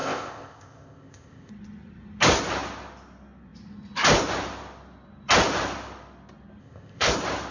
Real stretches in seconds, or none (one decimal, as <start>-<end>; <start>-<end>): 1.5-6.6; 7.1-7.5